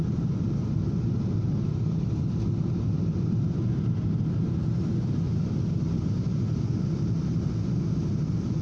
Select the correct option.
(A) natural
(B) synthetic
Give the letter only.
A